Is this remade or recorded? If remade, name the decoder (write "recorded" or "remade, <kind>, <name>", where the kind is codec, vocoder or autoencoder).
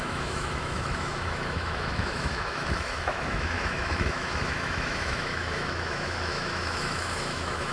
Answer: remade, autoencoder, DAC-VAE